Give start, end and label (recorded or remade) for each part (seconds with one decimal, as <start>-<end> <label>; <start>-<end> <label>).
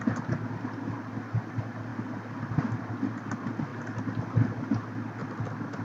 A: 0.0-5.8 recorded